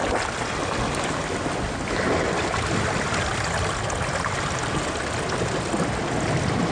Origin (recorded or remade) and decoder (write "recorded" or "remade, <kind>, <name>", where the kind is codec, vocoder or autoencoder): recorded